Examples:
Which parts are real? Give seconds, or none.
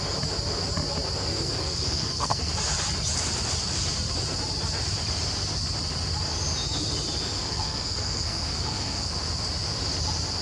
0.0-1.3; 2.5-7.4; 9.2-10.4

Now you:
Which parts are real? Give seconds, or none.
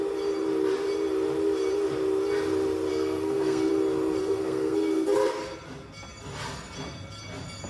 0.0-2.9; 3.7-4.2; 5.3-7.7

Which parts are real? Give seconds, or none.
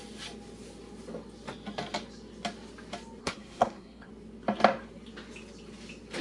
0.0-3.2; 4.1-6.2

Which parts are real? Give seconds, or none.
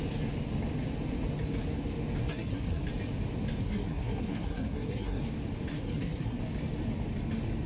0.0-2.3; 2.8-3.6; 5.2-5.7; 6.4-7.7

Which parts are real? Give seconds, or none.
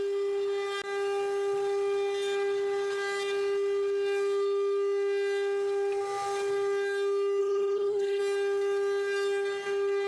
0.0-7.4; 8.2-10.1